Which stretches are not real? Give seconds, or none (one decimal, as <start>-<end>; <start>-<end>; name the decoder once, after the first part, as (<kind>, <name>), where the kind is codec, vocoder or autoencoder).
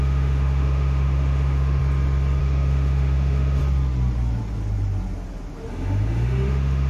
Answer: 0.0-1.8 (autoencoder, DAC-VAE); 2.4-3.6; 5.7-6.9